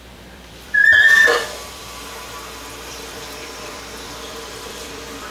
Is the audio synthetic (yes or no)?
yes